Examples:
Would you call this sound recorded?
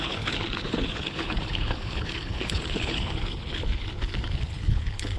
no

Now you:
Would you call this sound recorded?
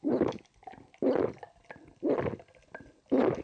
yes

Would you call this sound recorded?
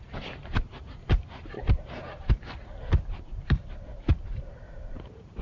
no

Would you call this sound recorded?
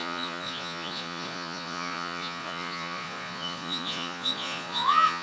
no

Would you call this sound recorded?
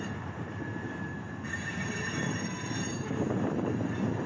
no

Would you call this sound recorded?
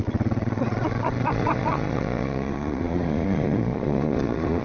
no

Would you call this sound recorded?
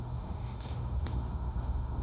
no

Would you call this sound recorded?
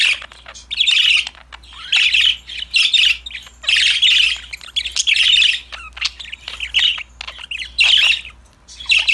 yes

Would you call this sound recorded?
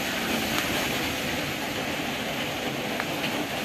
yes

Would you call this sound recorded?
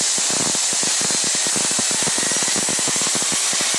yes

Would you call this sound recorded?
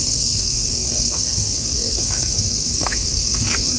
no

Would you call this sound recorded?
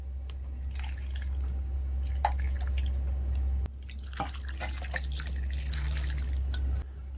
yes